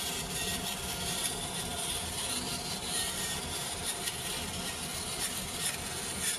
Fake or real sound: real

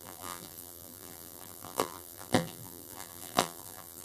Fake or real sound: fake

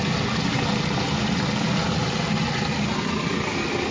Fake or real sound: real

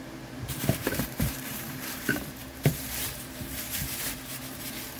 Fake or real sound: fake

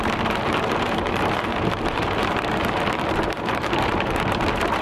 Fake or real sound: fake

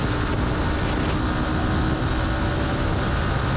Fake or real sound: real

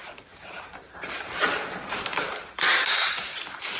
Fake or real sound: fake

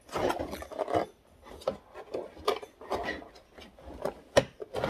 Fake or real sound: real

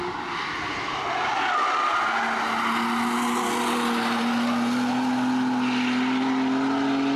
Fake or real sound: real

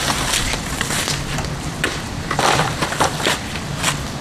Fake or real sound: fake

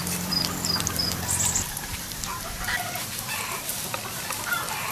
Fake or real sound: fake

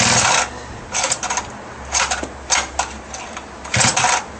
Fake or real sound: real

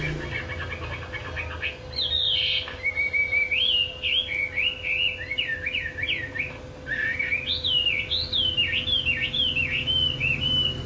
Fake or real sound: real